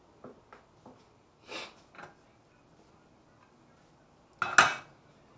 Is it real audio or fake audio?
real